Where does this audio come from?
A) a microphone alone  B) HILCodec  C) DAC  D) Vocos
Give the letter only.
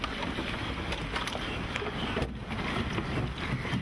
A